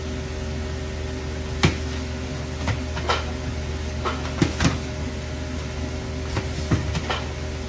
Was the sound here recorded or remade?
recorded